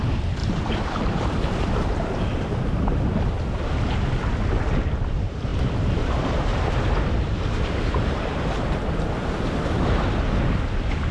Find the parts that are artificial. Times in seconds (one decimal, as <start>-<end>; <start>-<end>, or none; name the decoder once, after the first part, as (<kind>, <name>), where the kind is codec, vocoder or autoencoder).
0.4-2.6 (vocoder, BigVGAN v2); 6.5-8.9